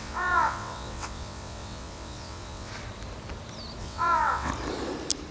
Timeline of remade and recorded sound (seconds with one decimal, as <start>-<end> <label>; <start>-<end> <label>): 0.0-2.7 remade; 2.7-3.8 recorded; 3.8-4.5 remade; 4.5-5.3 recorded